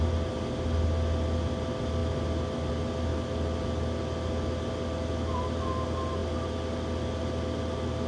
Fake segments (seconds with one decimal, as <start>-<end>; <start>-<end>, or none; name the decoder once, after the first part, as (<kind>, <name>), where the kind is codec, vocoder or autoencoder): none